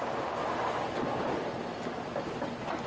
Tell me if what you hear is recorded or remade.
recorded